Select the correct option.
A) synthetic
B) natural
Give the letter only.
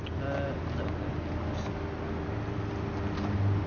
B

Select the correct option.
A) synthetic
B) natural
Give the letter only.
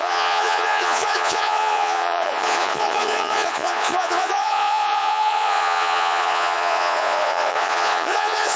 A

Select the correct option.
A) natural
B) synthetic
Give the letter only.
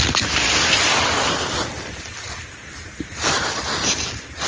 A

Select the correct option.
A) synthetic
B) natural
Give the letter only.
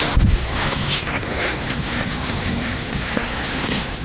A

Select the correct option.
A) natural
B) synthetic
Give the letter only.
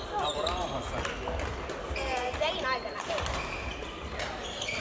A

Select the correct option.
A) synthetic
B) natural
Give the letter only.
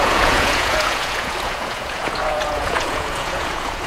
A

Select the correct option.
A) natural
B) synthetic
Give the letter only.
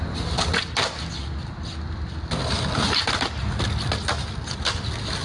A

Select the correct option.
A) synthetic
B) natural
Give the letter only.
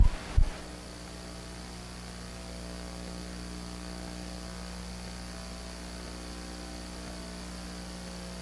B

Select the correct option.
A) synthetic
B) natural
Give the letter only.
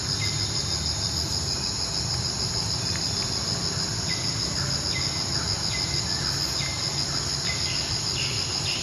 B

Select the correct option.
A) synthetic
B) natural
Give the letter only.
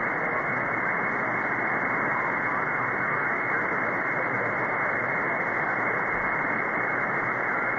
B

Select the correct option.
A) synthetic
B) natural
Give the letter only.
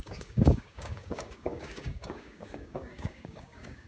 A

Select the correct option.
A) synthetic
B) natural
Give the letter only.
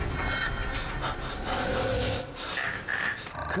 B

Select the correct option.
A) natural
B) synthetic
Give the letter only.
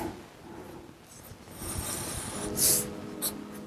A